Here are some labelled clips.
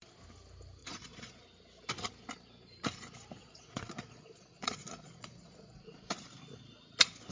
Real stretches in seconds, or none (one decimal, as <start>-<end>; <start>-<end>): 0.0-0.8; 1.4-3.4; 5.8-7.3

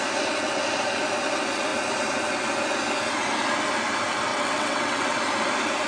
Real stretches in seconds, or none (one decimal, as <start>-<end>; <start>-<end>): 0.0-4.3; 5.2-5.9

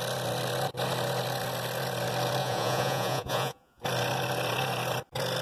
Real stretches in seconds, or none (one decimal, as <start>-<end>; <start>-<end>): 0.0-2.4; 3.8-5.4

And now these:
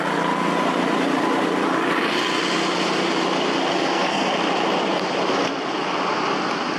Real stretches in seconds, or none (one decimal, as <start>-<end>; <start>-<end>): 0.0-3.7; 4.3-6.8